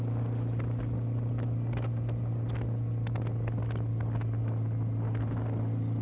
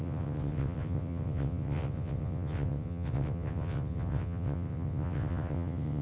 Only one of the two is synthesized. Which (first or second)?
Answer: second